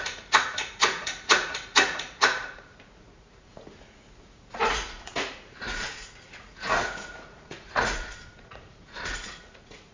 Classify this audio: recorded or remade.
remade